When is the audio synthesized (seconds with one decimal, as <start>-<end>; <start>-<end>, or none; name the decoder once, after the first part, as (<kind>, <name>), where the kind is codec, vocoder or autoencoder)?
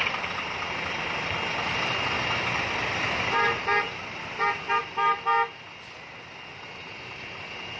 none